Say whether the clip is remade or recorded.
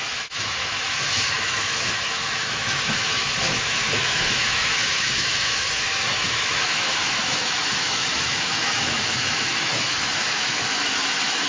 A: remade